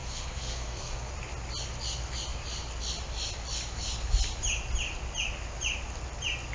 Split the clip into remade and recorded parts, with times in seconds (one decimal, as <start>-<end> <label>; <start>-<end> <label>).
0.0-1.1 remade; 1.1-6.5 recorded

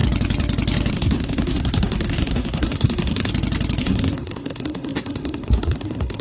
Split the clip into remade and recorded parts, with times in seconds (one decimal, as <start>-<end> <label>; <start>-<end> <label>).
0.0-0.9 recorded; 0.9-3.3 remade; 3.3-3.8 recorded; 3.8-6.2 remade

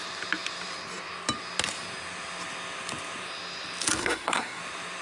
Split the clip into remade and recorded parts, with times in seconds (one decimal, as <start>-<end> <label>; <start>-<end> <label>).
0.0-4.0 recorded; 4.0-4.6 remade; 4.6-5.0 recorded

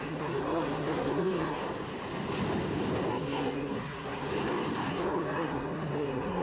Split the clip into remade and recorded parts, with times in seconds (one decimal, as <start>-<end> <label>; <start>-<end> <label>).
0.0-1.6 remade; 1.6-3.1 recorded; 3.1-4.3 remade; 4.3-4.9 recorded; 4.9-6.4 remade

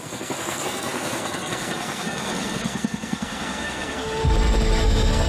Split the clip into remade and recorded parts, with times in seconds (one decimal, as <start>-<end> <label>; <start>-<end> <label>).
0.0-4.2 remade; 4.2-4.8 recorded; 4.8-5.3 remade

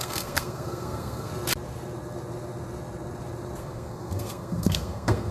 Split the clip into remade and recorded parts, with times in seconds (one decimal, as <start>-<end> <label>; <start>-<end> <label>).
0.0-1.3 remade; 1.3-3.6 recorded; 3.6-5.3 remade